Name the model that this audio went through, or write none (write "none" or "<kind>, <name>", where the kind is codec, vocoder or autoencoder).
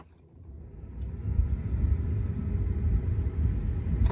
none